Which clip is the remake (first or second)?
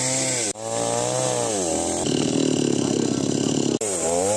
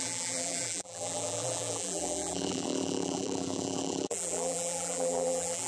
second